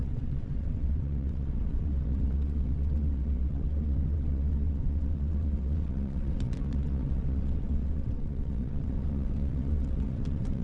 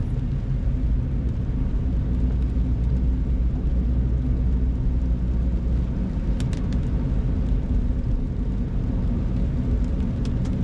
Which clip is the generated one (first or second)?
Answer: first